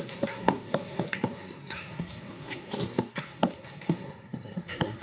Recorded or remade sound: remade